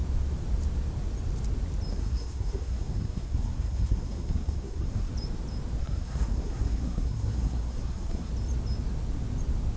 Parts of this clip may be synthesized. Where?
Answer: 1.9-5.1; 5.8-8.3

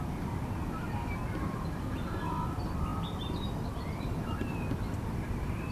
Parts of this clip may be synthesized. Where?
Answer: none

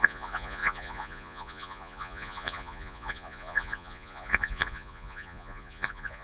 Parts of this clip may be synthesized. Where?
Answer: 0.0-6.2

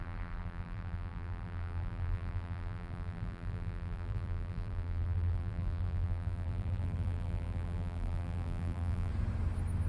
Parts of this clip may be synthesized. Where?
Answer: 0.0-9.1

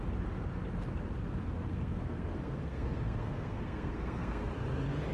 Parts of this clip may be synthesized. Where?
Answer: 1.4-4.5

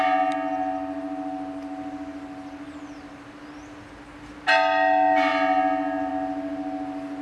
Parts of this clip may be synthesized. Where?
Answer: none

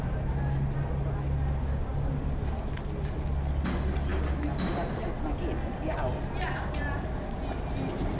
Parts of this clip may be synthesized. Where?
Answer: none

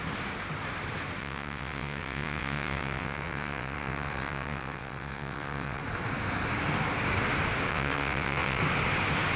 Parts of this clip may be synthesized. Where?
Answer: 1.2-5.8; 7.7-8.6